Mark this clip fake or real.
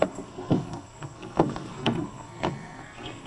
fake